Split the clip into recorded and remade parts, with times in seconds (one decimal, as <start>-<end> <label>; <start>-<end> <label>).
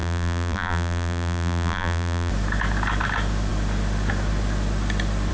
0.0-2.3 remade; 2.3-5.3 recorded